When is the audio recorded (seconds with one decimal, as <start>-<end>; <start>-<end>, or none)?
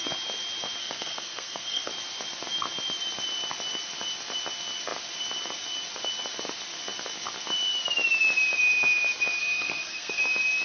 0.0-0.8; 1.9-9.4; 10.2-10.6